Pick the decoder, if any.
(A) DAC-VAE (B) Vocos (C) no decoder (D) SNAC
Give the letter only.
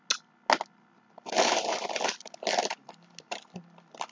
C